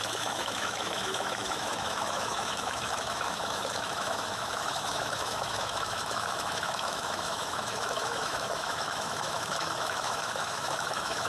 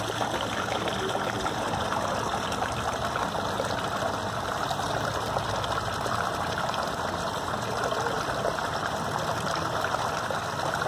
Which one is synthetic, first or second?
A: first